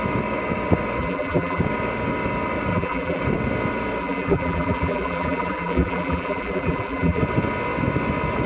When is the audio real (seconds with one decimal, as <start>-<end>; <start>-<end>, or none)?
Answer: 0.0-1.0; 1.6-2.7; 3.2-4.0; 7.2-8.5